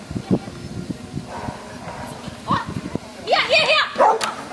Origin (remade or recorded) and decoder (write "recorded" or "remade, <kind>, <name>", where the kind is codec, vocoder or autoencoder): recorded